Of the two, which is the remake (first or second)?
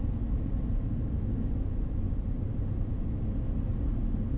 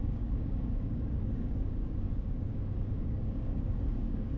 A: second